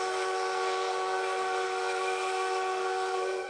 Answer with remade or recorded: remade